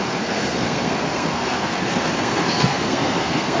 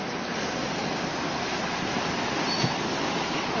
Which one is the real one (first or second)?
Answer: second